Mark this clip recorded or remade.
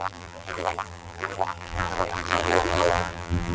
remade